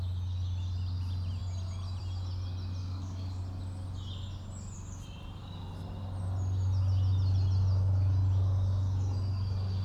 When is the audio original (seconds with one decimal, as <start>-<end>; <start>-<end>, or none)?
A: 0.0-2.8; 3.4-9.8